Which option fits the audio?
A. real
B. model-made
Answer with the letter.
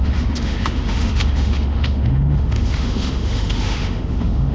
B